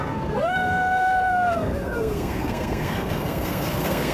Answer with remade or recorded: remade